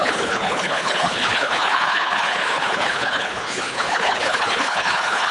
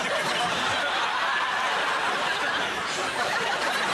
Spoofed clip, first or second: first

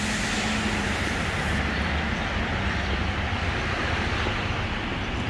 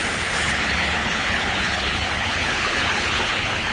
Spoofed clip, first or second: second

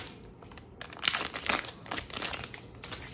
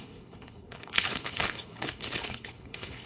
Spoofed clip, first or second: second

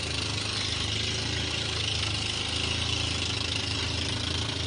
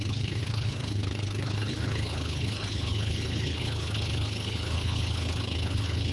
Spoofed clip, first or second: second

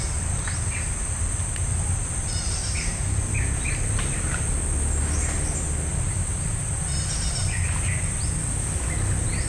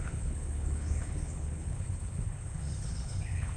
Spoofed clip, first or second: second